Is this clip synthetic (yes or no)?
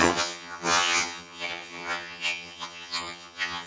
yes